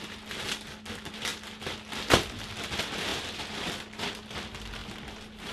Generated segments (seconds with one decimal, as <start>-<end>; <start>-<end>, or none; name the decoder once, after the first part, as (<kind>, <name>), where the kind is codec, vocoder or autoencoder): none